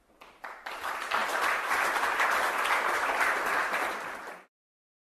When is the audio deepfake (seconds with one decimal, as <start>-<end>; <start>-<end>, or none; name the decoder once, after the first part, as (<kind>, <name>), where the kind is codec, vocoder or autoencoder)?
0.0-1.2 (vocoder, BigVGAN v2); 3.5-5.0